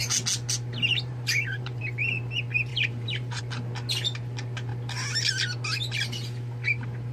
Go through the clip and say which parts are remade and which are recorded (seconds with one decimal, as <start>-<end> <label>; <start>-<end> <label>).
0.0-0.9 recorded; 0.9-1.8 remade; 1.8-2.7 recorded; 2.7-3.4 remade; 3.4-7.1 recorded